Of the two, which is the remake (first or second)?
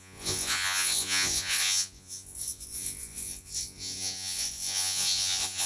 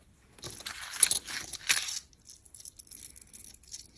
first